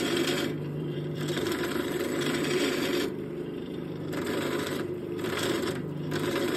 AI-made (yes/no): yes